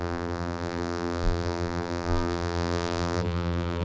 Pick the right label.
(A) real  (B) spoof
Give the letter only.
B